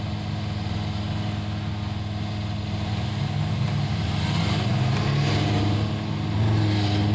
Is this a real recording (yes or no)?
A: yes